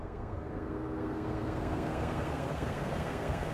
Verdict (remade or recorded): remade